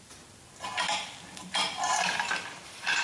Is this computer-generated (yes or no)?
no